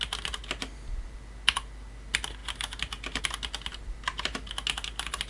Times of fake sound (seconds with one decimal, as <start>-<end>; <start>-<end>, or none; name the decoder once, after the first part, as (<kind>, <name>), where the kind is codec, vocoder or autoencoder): none